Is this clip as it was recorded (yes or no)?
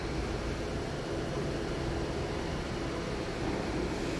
yes